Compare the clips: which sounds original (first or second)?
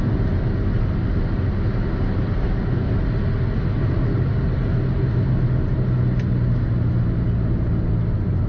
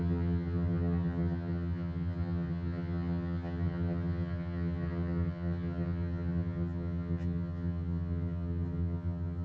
first